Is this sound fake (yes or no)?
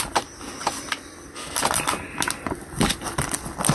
no